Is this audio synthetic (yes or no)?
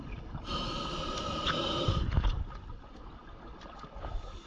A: no